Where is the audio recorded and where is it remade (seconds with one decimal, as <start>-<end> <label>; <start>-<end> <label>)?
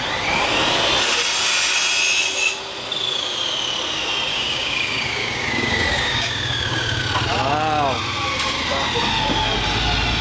0.0-4.3 recorded; 4.3-7.0 remade; 7.0-10.2 recorded